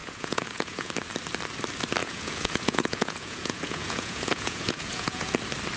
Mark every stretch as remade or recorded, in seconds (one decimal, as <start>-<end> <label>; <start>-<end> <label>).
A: 0.0-0.9 remade; 0.9-2.0 recorded; 2.0-5.3 remade; 5.3-5.8 recorded